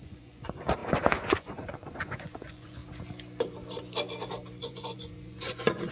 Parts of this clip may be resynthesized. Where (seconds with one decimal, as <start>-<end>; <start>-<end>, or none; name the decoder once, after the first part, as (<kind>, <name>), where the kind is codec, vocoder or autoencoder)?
0.0-2.8 (vocoder, Vocos); 4.6-5.9